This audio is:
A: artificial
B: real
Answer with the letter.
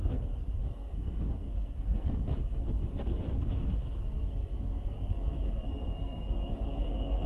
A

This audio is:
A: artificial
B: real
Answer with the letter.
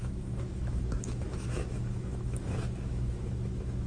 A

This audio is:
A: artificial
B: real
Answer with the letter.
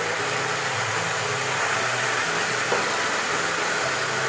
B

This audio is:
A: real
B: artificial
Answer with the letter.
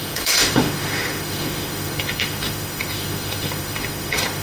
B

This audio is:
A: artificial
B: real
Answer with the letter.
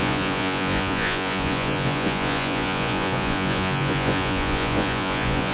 A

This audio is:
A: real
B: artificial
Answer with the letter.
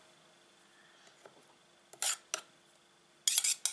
A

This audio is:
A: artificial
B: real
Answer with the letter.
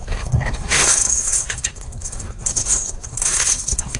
A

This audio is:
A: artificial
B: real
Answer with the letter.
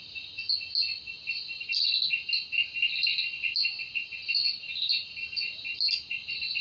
B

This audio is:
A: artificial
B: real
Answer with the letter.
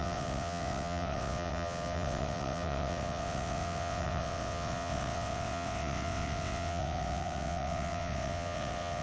A